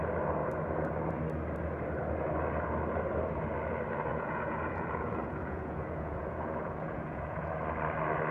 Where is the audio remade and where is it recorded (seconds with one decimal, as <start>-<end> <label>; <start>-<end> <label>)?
0.0-4.1 recorded; 4.1-7.5 remade; 7.5-8.3 recorded